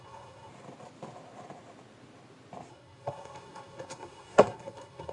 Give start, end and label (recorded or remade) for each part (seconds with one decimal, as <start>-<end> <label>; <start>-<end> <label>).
0.0-0.5 remade; 0.5-2.7 recorded; 2.7-5.1 remade